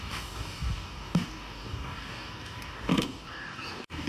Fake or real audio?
fake